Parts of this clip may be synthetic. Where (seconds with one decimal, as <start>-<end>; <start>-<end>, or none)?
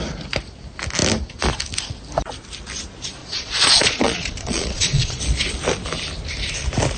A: 3.2-5.2